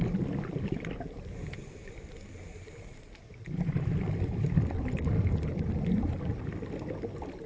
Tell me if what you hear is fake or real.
real